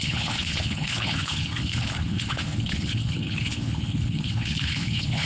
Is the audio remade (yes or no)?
yes